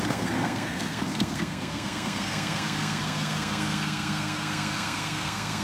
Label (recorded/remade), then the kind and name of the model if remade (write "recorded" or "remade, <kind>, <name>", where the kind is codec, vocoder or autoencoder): remade, codec, SNAC